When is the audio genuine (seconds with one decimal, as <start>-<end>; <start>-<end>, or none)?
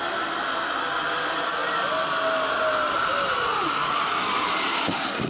0.0-3.5; 4.0-5.3